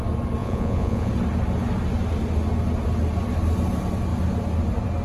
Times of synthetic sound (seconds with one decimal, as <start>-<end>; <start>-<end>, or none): 0.4-1.1